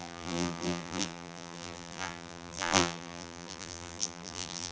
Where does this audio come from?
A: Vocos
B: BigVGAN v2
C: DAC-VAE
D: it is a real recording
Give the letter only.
B